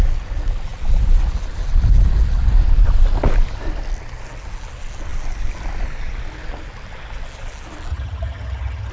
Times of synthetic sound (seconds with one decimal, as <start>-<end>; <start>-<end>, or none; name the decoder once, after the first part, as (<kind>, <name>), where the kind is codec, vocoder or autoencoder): 7.9-8.9 (vocoder, HiFi-GAN)